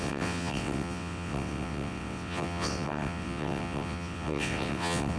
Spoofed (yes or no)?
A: yes